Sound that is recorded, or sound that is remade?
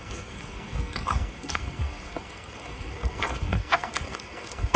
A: remade